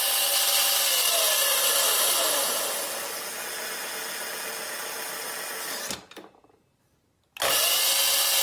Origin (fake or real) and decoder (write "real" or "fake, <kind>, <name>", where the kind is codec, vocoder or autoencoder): real